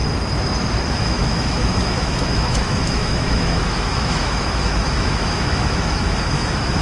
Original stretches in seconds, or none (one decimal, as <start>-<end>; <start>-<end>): 0.0-0.9